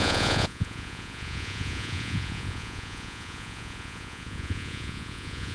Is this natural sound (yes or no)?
no